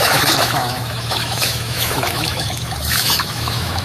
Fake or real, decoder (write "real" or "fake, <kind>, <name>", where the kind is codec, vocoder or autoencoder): fake, autoencoder, DAC-VAE